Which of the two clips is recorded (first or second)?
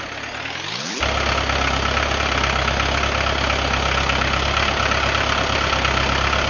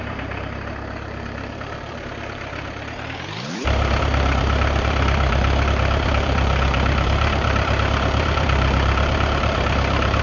first